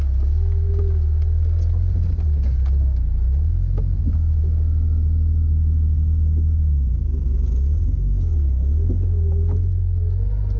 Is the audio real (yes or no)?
yes